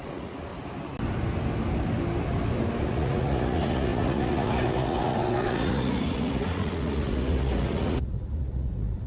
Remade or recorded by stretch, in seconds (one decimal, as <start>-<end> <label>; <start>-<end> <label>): 0.0-0.5 remade; 0.5-2.8 recorded; 2.8-9.1 remade